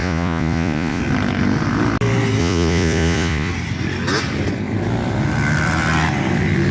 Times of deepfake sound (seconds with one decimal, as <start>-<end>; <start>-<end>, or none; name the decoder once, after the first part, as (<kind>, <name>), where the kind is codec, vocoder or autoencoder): 0.0-1.0 (vocoder, Vocos); 2.4-3.5